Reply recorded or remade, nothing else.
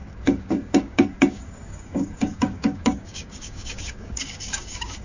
remade